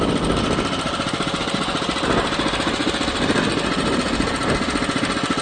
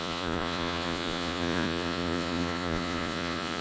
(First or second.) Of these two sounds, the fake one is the second